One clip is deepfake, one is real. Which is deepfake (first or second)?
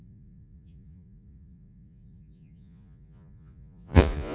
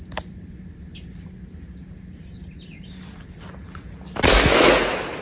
first